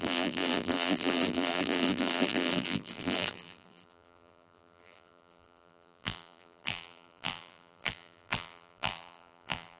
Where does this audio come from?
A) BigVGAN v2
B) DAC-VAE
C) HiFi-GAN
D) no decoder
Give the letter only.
A